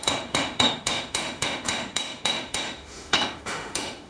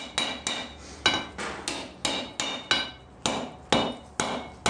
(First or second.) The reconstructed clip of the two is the first